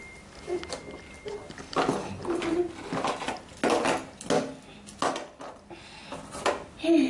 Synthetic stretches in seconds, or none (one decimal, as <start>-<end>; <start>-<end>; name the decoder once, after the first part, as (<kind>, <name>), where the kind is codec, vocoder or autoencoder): 0.0-2.6 (vocoder, BigVGAN v2); 5.1-6.0; 6.5-7.1